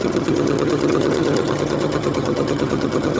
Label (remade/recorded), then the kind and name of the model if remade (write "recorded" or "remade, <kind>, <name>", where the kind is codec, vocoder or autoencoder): remade, vocoder, HiFi-GAN